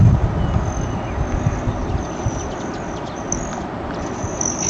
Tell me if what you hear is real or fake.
real